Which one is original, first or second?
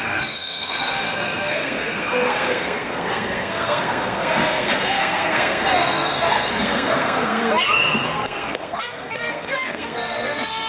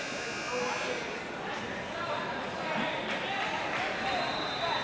second